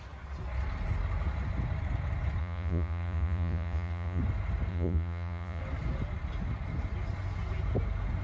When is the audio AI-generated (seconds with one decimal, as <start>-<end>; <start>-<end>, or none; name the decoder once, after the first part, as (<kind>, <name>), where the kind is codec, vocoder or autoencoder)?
2.4-4.2 (vocoder, Vocos); 4.7-5.6

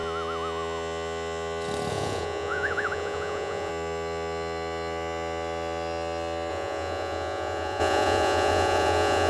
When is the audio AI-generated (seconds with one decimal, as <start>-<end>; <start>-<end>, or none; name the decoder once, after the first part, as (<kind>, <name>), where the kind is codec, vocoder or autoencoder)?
1.9-3.7 (vocoder, Vocos); 6.5-9.3

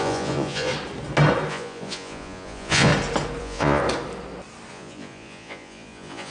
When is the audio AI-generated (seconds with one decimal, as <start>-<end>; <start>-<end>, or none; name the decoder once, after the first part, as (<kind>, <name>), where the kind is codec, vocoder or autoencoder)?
0.0-0.7 (vocoder, Vocos); 1.5-2.9; 3.4-3.8; 4.7-6.3

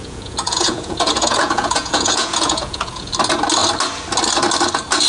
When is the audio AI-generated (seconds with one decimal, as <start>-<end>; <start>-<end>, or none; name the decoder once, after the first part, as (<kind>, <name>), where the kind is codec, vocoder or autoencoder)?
0.0-3.1 (vocoder, Vocos)

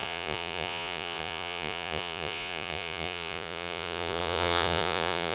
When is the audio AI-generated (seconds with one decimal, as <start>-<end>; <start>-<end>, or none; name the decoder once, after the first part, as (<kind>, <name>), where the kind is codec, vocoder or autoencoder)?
0.0-5.3 (vocoder, Vocos)

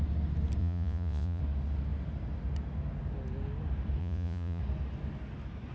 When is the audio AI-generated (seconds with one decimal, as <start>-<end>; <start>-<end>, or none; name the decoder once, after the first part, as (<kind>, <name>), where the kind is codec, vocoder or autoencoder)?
0.6-1.4 (vocoder, Vocos); 4.0-4.6

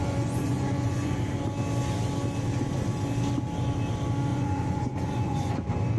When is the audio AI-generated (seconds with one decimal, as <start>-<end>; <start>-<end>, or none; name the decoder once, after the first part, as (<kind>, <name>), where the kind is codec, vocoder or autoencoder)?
0.0-1.2 (vocoder, Vocos); 4.3-5.5